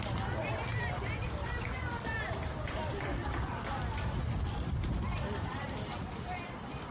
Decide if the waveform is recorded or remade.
remade